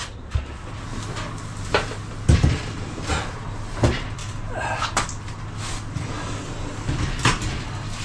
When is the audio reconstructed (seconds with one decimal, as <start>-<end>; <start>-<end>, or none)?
4.2-4.8